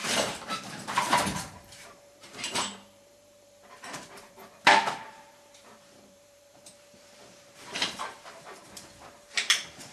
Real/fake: fake